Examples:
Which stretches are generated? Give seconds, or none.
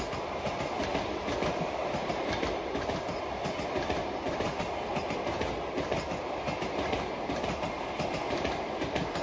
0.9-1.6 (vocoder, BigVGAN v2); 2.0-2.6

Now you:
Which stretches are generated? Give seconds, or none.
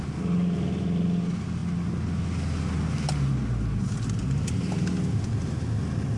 none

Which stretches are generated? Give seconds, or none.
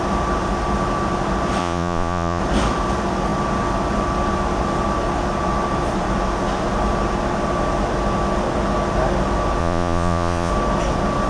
1.6-2.4 (vocoder, Vocos); 9.6-10.5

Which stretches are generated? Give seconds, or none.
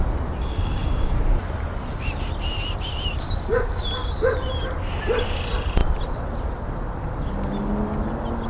0.8-1.5 (vocoder, BigVGAN v2)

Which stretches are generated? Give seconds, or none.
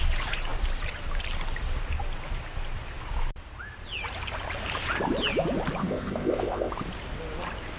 5.8-6.7 (codec, ZipCodec)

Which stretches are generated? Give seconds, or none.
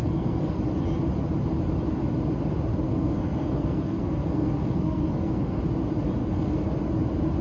0.0-0.6 (codec, SNAC); 2.7-5.6; 6.2-6.8